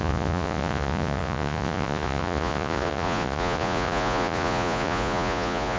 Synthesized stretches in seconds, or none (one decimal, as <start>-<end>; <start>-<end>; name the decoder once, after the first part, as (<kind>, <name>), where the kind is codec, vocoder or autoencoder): 0.0-5.8 (vocoder, Vocos)